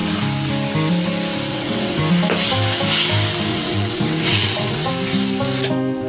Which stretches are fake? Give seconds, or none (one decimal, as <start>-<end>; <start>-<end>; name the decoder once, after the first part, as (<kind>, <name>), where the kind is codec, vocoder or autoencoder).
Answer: 1.5-2.0 (vocoder, WaveNeXt); 3.5-4.9